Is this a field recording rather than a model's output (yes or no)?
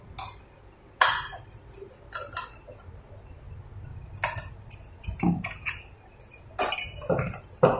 yes